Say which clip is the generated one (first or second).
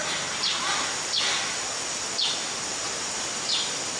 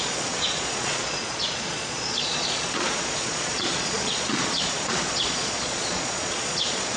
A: second